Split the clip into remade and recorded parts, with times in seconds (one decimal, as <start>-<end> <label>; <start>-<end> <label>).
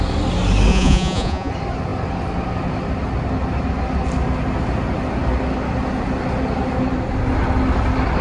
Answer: 0.0-0.7 recorded; 0.7-1.5 remade; 1.5-8.2 recorded